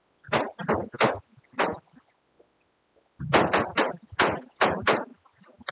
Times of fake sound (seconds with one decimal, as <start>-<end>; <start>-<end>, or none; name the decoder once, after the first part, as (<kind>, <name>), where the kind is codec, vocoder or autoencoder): none